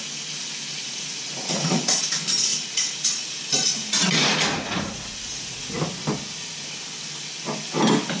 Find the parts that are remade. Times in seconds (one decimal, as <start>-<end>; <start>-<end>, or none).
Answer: 0.8-2.0; 2.5-5.8